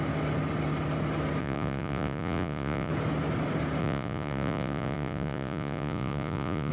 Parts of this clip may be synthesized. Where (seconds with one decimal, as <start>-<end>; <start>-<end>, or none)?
1.4-2.9; 3.8-6.7

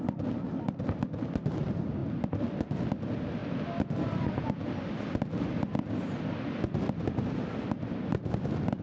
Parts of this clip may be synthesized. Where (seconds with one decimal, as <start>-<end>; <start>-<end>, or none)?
none